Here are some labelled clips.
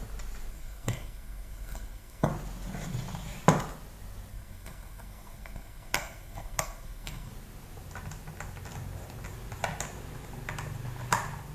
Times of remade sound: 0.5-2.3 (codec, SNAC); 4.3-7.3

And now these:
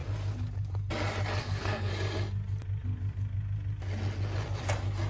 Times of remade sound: 1.4-1.9 (codec, SNAC)